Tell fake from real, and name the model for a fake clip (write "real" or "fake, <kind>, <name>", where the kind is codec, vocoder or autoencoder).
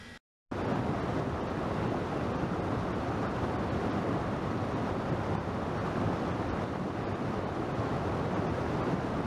real